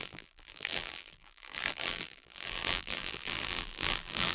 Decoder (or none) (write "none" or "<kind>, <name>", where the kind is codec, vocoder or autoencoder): vocoder, BigVGAN v2